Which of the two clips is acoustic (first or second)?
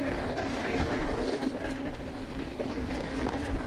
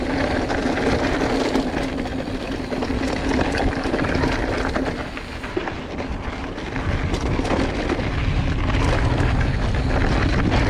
second